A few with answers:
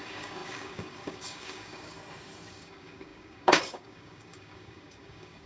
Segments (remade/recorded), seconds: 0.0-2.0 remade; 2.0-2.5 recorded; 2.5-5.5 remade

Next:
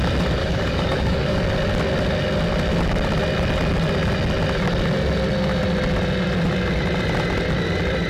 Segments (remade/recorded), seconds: 0.0-0.4 recorded; 0.4-1.4 remade; 1.4-8.1 recorded